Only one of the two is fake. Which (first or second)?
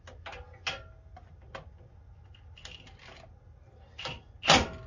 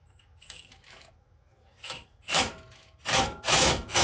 second